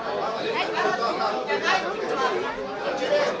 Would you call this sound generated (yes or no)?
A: no